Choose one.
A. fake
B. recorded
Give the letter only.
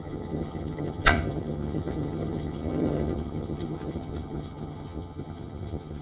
A